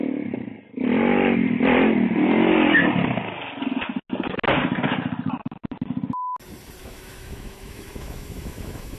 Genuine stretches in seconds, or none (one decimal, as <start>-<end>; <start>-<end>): 0.0-6.8

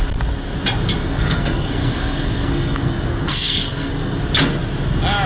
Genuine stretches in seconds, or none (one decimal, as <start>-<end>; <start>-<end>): 0.0-1.0; 4.2-5.3

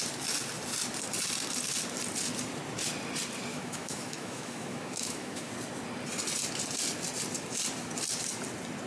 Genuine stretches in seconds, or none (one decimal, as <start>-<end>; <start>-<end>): 0.0-3.5; 5.5-8.9